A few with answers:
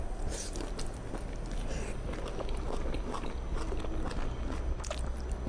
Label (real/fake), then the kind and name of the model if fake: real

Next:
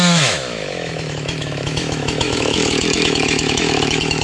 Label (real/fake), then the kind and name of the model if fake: fake, autoencoder, DAC-VAE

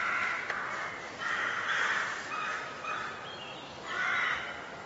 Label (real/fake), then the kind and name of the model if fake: real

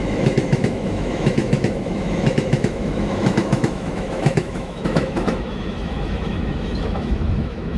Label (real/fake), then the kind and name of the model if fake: fake, autoencoder, DAC-VAE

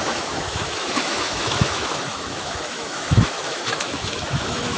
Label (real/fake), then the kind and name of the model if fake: fake, autoencoder, DAC-VAE